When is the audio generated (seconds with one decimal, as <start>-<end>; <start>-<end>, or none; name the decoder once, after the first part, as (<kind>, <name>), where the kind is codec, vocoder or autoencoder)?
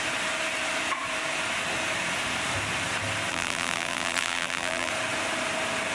3.3-4.9 (vocoder, BigVGAN v2)